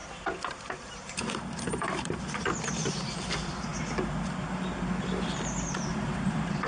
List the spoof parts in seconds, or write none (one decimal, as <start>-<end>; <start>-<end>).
0.0-2.2; 5.9-6.7